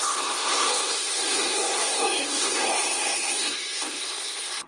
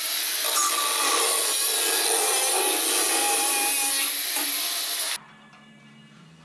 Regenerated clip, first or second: first